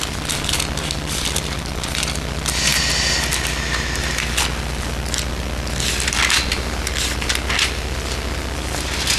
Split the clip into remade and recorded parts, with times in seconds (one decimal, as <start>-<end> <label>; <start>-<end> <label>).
0.0-9.2 recorded